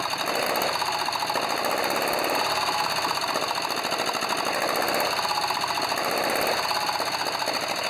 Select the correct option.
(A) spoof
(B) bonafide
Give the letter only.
B